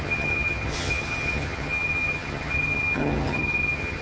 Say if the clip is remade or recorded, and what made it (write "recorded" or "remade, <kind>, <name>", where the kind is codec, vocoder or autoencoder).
remade, vocoder, HiFi-GAN